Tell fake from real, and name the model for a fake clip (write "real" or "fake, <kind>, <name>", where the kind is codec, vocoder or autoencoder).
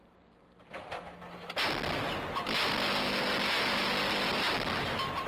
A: real